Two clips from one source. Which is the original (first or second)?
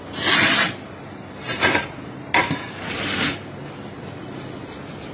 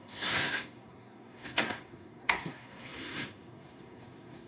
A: first